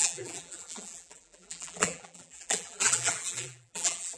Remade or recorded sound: remade